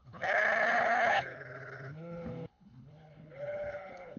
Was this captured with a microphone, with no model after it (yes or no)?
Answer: no